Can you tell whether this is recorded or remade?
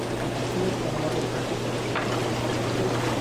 recorded